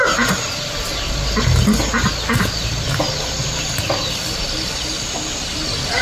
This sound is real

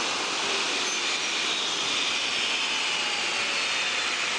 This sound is real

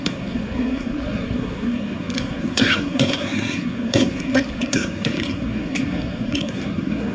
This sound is fake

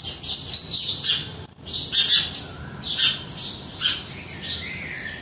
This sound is real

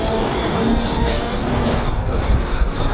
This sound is fake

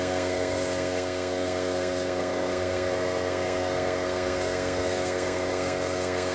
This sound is fake